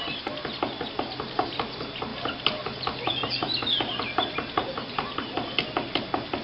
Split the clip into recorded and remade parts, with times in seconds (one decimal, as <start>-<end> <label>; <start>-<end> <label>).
0.0-6.4 recorded